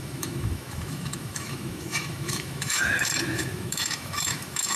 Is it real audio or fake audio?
fake